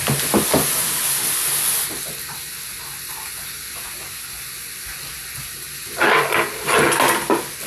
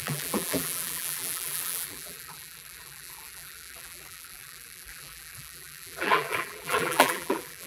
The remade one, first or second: second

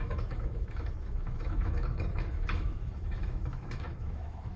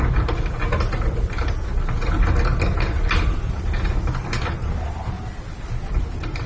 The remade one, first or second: first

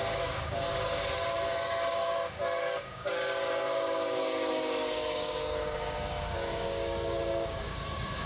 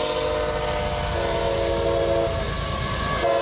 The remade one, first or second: first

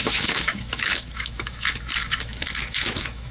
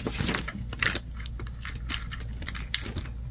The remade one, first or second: first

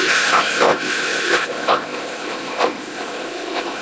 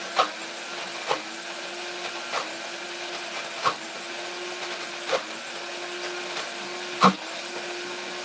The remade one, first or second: first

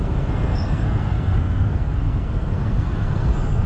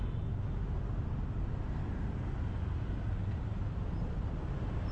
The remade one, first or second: first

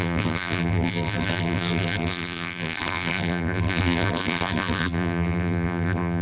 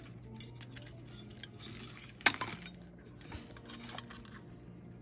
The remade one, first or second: first